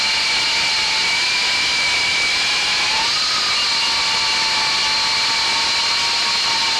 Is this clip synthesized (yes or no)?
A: no